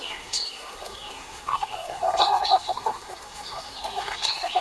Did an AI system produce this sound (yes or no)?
yes